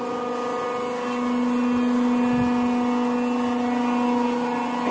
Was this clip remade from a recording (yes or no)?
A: no